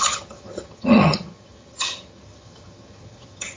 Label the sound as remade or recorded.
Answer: remade